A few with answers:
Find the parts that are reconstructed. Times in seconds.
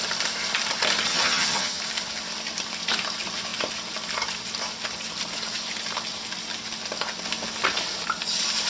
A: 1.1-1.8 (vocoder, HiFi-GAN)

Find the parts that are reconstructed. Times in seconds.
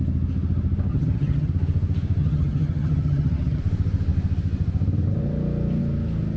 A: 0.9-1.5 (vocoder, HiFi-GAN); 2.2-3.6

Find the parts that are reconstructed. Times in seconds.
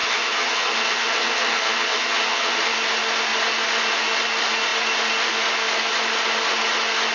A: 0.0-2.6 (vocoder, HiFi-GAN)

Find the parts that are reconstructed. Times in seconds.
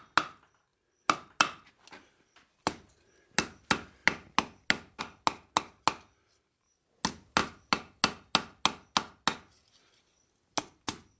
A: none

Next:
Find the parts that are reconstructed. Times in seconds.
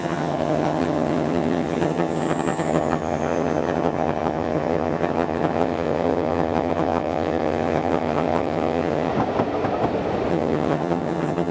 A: 0.0-9.1 (vocoder, HiFi-GAN); 10.3-11.5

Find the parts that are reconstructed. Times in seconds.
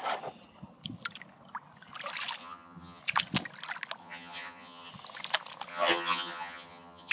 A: 2.4-3.0 (vocoder, HiFi-GAN); 4.0-4.9; 5.7-7.1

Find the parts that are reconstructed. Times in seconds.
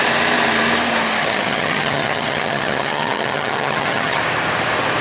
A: 1.2-4.2 (vocoder, HiFi-GAN)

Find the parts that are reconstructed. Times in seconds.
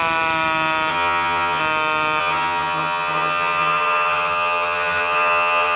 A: 0.9-1.6 (vocoder, HiFi-GAN); 2.2-5.8